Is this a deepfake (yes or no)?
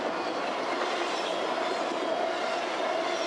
no